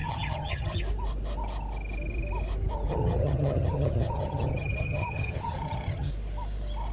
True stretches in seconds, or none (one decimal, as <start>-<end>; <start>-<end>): 0.8-2.9; 6.1-6.9